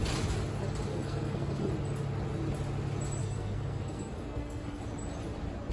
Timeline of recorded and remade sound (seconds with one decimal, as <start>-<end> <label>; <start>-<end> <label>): 0.0-0.9 recorded; 0.9-1.7 remade; 1.7-3.2 recorded; 3.2-4.8 remade; 4.8-5.7 recorded